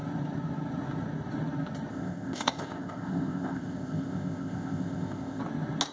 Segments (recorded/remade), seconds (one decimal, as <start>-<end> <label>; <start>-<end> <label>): 0.0-1.9 recorded; 1.9-5.4 remade; 5.4-5.9 recorded

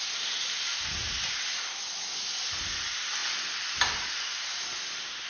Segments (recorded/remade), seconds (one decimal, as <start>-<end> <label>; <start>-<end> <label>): 0.0-5.3 recorded

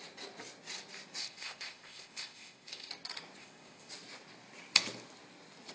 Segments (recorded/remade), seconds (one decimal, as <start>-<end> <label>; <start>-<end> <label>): 0.0-1.2 recorded; 1.2-2.9 remade; 2.9-3.4 recorded; 3.4-3.9 remade; 3.9-5.7 recorded

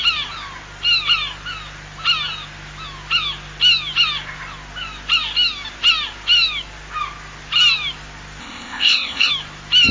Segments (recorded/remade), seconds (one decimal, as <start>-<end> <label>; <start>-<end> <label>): 0.0-8.4 recorded; 8.4-9.3 remade; 9.3-9.9 recorded